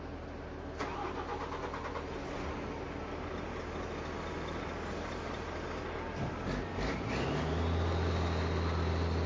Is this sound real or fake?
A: real